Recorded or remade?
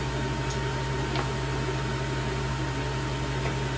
recorded